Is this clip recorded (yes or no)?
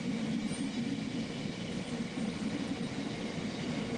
yes